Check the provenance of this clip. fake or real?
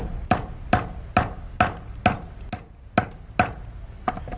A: real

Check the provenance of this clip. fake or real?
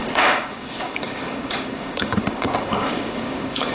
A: fake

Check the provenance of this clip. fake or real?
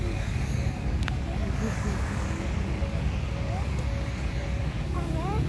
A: fake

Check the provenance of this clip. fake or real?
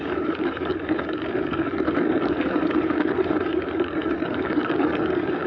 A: fake